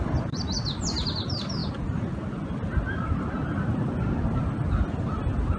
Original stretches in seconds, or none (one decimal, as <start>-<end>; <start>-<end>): 1.6-4.7